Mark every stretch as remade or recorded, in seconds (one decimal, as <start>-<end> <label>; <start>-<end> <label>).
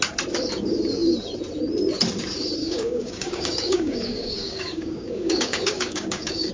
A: 0.0-2.6 recorded; 2.6-6.5 remade